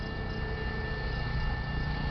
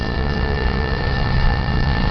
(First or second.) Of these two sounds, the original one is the first